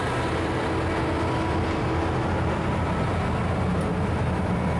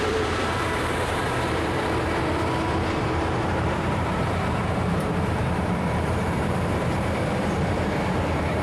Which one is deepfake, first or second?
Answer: second